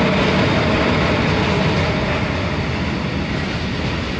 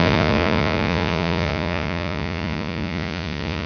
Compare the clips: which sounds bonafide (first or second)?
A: first